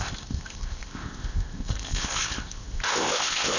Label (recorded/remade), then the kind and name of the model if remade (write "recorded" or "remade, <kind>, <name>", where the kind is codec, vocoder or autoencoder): remade, codec, ZipCodec